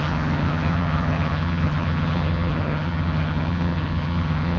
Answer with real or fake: fake